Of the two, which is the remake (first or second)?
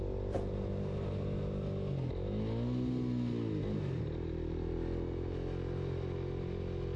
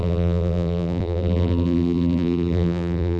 second